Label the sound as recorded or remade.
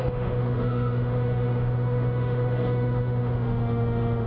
remade